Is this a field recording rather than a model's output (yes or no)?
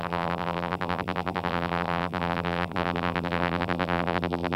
no